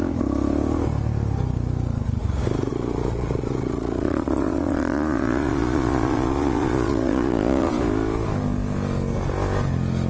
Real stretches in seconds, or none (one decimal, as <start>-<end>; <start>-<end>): 0.0-2.7; 7.7-10.1